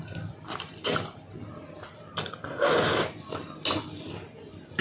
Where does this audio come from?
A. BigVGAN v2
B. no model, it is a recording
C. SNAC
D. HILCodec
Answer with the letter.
B